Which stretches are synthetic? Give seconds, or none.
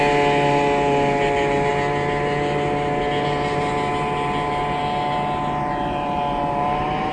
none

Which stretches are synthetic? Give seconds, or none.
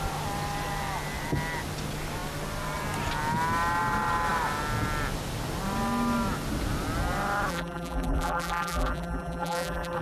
7.5-10.0 (vocoder, BigVGAN v2)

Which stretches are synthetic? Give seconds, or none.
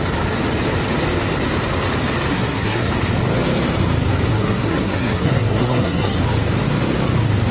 2.3-2.9 (codec, SNAC); 4.3-6.2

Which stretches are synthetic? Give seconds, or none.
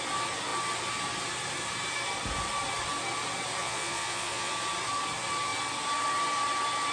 3.6-4.5 (vocoder, Vocos)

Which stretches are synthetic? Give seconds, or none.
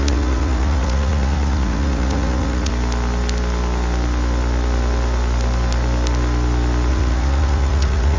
0.0-2.7 (vocoder, Vocos); 6.9-8.2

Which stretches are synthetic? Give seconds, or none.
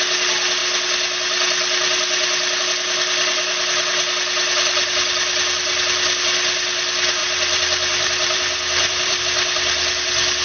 7.2-9.2 (vocoder, BigVGAN v2)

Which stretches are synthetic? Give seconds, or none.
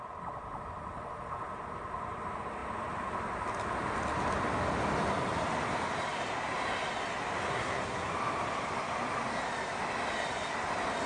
7.5-8.1 (codec, SNAC)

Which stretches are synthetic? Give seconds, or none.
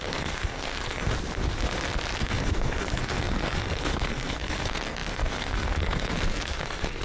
0.0-1.1 (codec, SNAC); 2.2-7.0